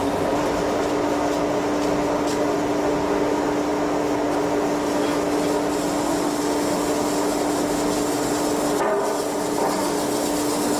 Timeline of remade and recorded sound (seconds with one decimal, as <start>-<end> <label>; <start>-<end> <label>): 0.0-10.8 recorded